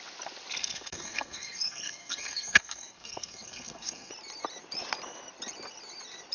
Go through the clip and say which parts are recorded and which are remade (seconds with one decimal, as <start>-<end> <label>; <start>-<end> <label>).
0.0-0.6 recorded; 0.6-4.1 remade; 4.1-6.3 recorded